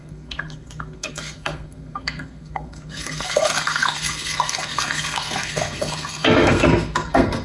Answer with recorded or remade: remade